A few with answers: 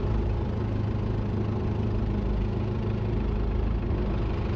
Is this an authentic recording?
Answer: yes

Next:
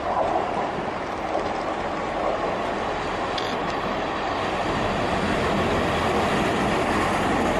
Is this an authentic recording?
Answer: yes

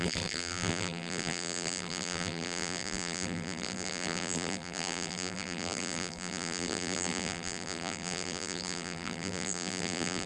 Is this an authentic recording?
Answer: no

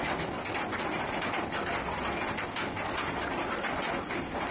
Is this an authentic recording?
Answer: yes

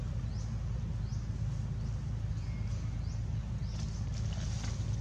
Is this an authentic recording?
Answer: yes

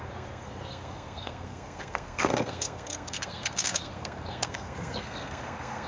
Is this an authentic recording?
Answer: no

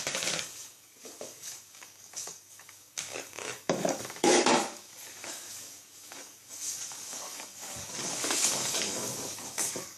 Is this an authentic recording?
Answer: no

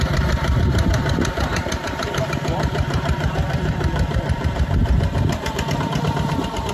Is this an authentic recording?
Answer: no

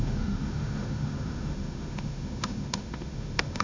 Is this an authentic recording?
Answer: no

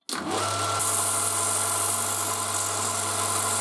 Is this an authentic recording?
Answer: yes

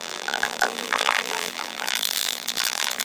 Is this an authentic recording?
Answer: no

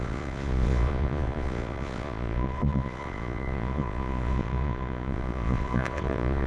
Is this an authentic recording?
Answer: no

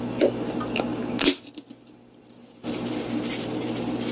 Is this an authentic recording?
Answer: yes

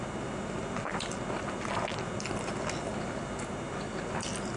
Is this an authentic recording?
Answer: yes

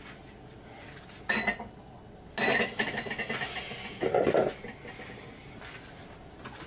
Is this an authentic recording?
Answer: yes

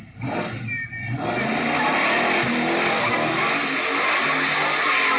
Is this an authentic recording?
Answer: yes